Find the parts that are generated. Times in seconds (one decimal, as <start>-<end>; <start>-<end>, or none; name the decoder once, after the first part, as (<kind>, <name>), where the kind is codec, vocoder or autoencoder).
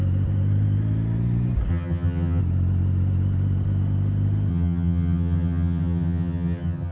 1.7-2.4 (vocoder, HiFi-GAN); 4.5-6.9